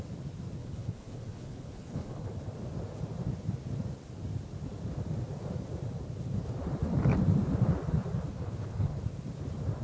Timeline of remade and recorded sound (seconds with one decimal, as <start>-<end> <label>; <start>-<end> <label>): 0.0-0.6 recorded; 0.6-2.3 remade; 2.3-8.4 recorded; 8.4-9.0 remade; 9.0-9.8 recorded